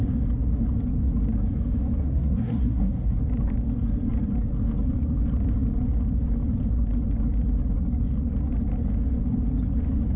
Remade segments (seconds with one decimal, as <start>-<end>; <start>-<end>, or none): 2.0-3.2